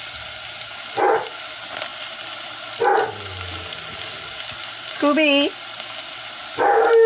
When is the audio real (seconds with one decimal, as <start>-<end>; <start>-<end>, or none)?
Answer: 0.0-7.1